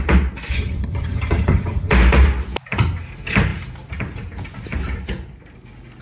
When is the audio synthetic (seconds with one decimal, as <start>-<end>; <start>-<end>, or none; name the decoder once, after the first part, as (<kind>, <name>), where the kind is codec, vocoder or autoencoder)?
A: 0.5-1.9 (vocoder, HiFi-GAN)